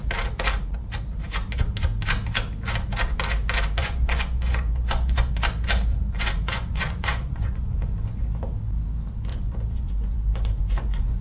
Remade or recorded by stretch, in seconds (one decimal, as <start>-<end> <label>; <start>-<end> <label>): 0.0-3.8 recorded; 3.8-5.3 remade; 5.3-5.9 recorded; 5.9-8.2 remade; 8.2-9.3 recorded; 9.3-11.2 remade